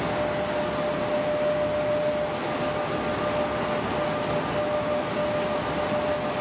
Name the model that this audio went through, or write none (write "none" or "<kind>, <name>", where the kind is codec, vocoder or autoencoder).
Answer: none